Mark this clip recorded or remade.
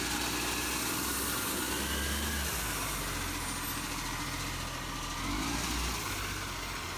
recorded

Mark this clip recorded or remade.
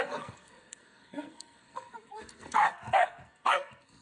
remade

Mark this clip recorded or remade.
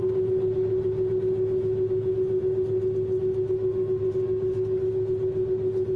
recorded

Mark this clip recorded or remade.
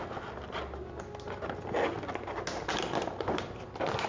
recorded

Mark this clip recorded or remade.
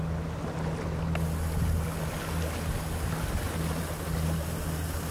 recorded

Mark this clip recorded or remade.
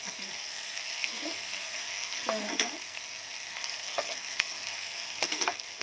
remade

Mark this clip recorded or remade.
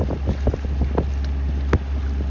recorded